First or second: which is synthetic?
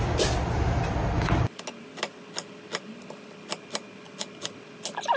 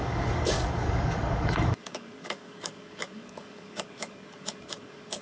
second